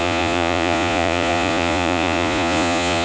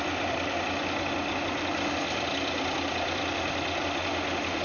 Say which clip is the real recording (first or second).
second